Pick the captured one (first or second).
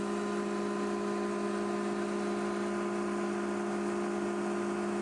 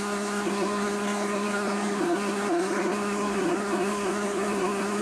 first